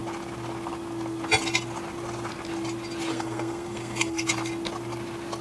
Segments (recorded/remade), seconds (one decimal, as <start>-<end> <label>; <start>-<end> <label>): 0.0-3.1 recorded; 3.1-4.3 remade; 4.3-5.4 recorded